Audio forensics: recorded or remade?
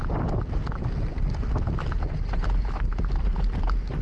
recorded